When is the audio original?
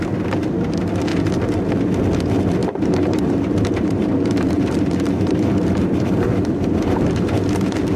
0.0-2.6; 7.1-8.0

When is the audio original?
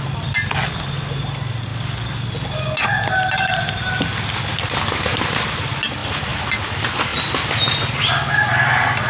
0.0-9.1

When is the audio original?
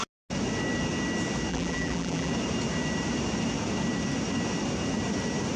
0.0-1.5; 2.3-5.6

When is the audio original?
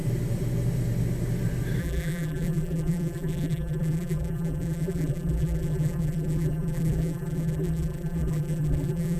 0.0-1.8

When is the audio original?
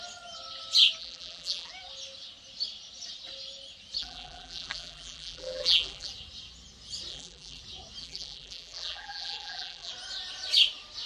0.0-1.0; 1.7-4.0; 6.1-7.1; 7.6-8.0; 9.9-11.1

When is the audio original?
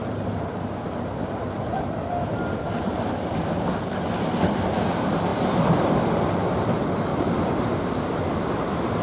0.0-5.3; 6.1-7.1; 7.6-9.0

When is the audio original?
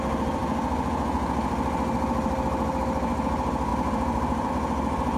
0.0-3.7; 4.5-5.2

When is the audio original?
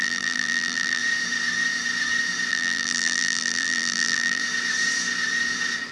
1.0-2.5; 4.4-5.9